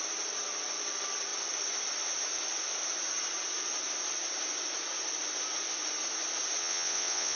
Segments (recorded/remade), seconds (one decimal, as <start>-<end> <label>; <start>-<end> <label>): 0.0-6.6 recorded; 6.6-7.4 remade